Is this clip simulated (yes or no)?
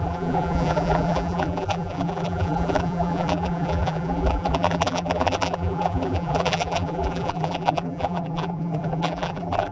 yes